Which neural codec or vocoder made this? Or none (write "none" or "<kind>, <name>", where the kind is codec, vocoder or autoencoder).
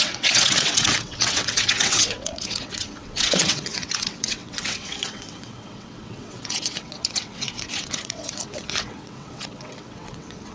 vocoder, WaveNeXt